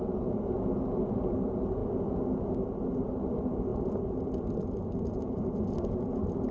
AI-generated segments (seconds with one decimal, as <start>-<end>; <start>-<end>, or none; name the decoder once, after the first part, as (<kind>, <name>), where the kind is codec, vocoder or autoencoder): none